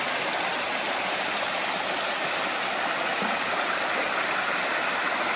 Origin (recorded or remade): recorded